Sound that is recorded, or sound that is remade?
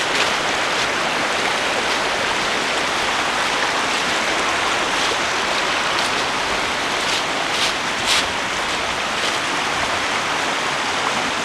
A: recorded